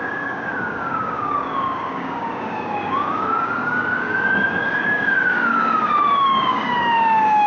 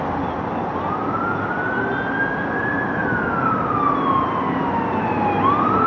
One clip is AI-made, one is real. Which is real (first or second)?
second